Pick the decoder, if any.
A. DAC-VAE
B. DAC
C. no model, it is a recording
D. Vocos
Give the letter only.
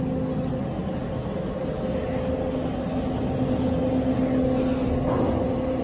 C